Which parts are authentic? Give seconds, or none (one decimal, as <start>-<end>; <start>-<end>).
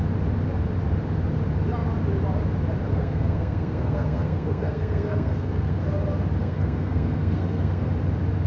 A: 0.0-2.9; 5.8-6.4; 7.9-8.5